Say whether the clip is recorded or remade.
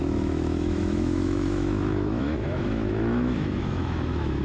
remade